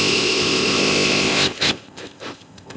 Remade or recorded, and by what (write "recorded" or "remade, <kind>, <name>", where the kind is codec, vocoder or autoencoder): remade, codec, ZipCodec